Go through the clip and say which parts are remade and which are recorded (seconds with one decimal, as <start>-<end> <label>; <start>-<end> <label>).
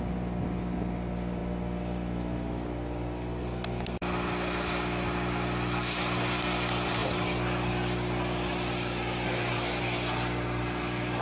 0.0-11.2 recorded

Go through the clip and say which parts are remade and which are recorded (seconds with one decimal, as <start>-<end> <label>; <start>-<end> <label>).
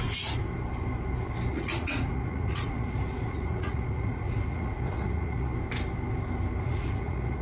0.0-0.4 remade; 0.4-1.5 recorded; 1.5-5.5 remade; 5.5-6.6 recorded; 6.6-7.4 remade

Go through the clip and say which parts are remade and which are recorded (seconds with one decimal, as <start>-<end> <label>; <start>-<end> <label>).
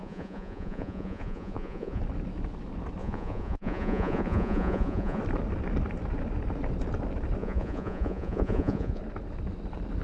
0.0-2.0 remade; 2.0-3.0 recorded; 3.0-5.2 remade; 5.2-7.4 recorded; 7.4-9.0 remade; 9.0-10.0 recorded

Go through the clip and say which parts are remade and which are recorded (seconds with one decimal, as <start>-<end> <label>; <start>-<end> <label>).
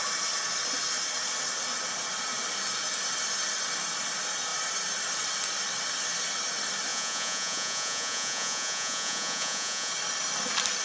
0.0-6.9 recorded; 6.9-9.9 remade; 9.9-10.8 recorded